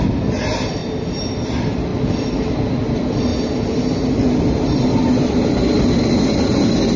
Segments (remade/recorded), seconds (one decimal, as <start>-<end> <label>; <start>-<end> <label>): 0.0-0.8 recorded; 0.8-1.3 remade; 1.3-3.3 recorded; 3.3-4.1 remade; 4.1-7.0 recorded